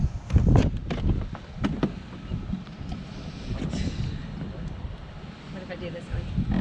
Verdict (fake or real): real